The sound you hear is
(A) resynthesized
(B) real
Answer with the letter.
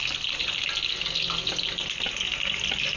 B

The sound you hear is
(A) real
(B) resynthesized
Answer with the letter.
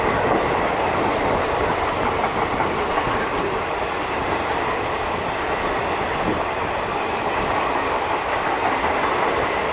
A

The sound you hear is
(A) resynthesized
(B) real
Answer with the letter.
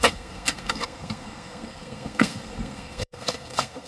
A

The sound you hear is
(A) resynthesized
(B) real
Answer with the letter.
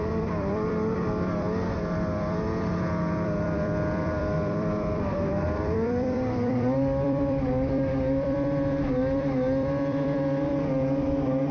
A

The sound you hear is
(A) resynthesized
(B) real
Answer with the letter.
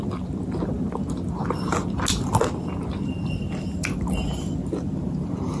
B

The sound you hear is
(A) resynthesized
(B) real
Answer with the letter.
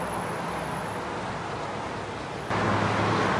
B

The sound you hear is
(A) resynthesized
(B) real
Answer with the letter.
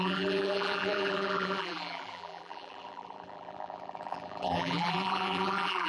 A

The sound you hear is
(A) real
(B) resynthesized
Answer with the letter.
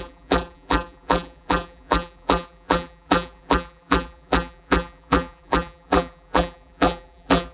B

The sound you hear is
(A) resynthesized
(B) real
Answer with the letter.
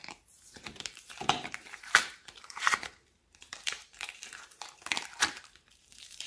A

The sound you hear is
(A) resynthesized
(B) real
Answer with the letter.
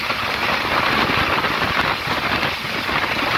B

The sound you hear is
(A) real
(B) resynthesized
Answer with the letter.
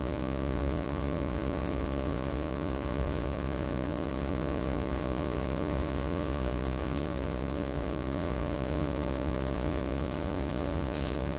B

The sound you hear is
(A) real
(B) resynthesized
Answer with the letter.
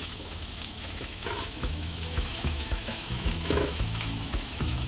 B